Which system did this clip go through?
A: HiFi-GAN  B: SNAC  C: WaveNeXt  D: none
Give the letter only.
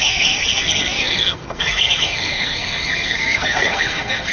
B